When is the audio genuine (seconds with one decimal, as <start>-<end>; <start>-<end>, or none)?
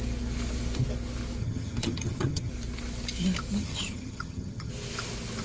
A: 0.0-1.4; 2.5-3.6; 4.7-5.4